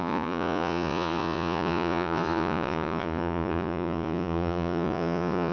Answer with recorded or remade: remade